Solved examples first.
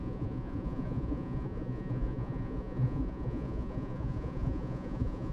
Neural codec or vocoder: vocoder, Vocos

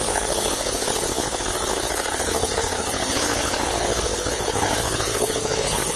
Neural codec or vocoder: codec, HILCodec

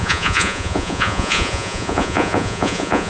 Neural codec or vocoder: vocoder, Vocos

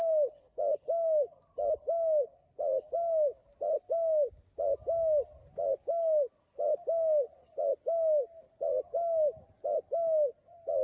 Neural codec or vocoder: none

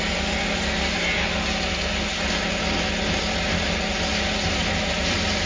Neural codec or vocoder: none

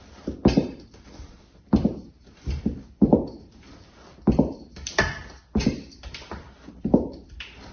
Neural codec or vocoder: vocoder, BigVGAN v2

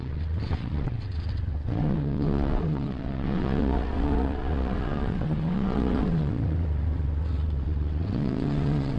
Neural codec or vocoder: vocoder, WaveNeXt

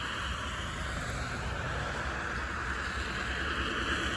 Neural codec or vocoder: none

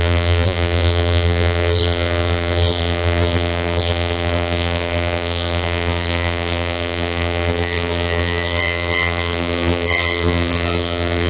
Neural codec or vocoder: vocoder, BigVGAN v2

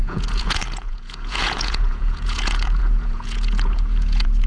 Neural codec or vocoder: vocoder, Vocos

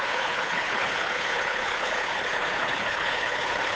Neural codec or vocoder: codec, HILCodec